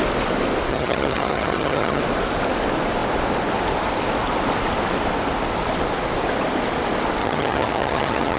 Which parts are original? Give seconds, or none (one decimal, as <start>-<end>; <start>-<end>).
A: 0.0-0.7; 2.0-7.2